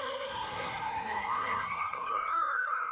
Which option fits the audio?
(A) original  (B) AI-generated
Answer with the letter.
B